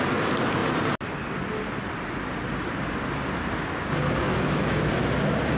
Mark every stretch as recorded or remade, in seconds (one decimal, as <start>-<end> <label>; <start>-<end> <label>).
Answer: 0.0-4.3 recorded; 4.3-4.9 remade; 4.9-5.6 recorded